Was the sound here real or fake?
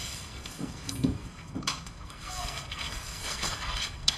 fake